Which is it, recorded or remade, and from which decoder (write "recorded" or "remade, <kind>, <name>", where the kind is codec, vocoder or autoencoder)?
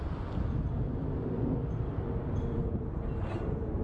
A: recorded